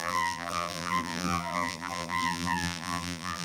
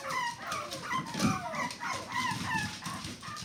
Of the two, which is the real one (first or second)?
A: second